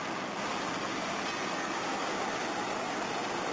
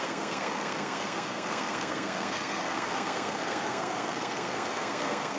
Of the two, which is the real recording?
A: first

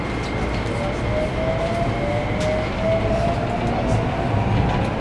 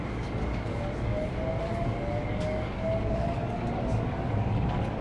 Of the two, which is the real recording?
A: first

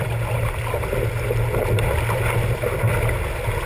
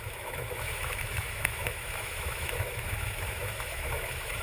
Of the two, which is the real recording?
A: first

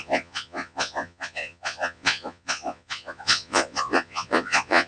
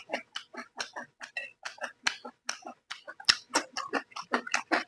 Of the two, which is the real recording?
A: second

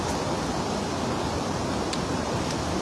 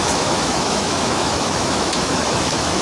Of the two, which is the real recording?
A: first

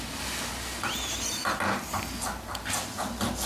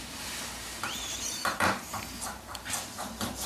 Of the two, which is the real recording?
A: first